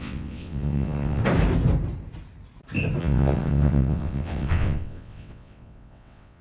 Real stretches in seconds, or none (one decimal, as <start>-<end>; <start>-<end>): 1.2-3.0